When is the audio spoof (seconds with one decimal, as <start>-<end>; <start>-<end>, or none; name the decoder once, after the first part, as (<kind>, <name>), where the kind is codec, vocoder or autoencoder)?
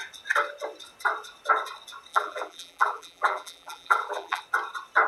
2.1-4.4 (vocoder, BigVGAN v2)